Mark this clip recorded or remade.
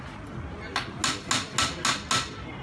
recorded